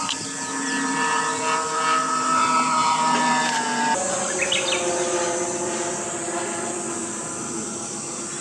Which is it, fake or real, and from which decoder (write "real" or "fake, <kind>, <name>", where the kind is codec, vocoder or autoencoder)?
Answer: real